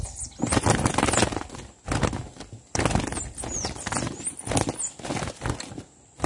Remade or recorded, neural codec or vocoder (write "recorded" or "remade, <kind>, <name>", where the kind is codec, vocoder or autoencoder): recorded